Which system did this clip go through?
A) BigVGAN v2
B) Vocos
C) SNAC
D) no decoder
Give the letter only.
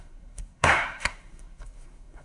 C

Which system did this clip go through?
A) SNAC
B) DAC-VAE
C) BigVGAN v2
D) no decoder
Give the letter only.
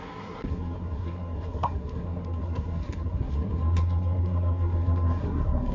A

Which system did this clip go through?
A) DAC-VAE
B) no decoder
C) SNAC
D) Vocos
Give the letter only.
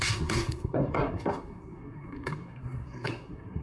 C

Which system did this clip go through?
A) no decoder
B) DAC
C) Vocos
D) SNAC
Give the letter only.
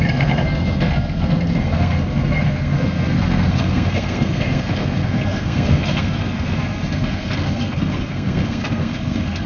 D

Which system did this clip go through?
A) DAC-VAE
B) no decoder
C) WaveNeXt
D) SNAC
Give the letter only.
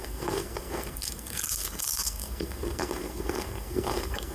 D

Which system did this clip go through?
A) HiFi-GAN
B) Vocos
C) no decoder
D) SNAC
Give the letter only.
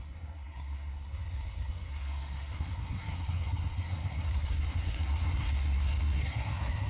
D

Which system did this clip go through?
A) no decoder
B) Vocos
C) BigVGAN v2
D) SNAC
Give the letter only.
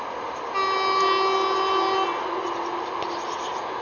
A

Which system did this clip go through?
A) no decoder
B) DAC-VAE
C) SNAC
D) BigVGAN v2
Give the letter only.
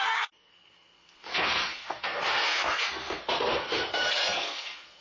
C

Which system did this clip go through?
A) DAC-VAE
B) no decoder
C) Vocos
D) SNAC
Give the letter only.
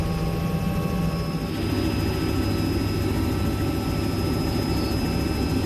B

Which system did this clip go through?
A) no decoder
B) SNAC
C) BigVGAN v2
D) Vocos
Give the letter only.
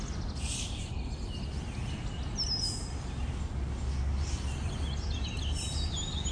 A